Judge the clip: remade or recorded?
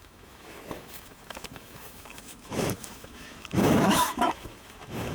remade